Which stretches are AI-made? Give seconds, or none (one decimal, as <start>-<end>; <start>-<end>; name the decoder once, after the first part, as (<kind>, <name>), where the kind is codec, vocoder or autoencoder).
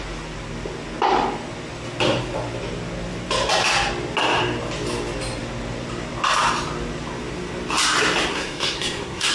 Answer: 8.3-9.3 (codec, SNAC)